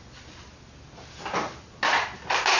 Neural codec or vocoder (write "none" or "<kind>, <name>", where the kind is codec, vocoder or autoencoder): none